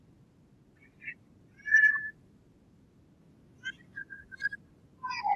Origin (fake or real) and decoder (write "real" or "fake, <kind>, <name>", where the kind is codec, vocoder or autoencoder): real